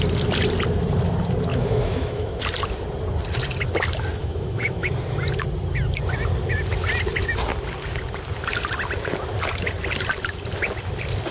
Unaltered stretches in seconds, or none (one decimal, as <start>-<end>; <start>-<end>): 0.0-1.5; 2.4-4.2; 4.9-11.3